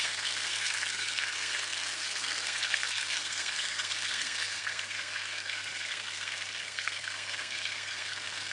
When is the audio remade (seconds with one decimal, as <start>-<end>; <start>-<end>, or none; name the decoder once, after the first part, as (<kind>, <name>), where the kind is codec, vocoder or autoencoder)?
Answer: 0.0-8.5 (codec, SNAC)